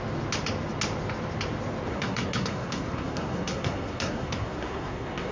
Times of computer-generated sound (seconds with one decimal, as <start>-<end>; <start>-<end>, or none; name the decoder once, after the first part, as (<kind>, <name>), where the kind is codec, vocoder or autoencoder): 1.9-5.3 (codec, SNAC)